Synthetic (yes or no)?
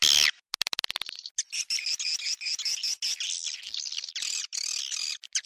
no